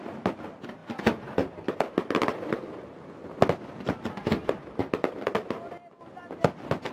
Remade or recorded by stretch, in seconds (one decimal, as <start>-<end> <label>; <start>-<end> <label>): 0.0-6.9 recorded